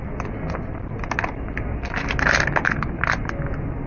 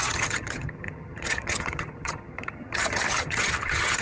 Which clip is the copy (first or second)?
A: second